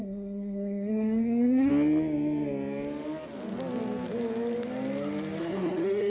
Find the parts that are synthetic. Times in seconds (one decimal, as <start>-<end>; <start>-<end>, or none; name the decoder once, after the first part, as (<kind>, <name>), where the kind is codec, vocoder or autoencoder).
0.0-1.7 (codec, SNAC); 5.4-6.1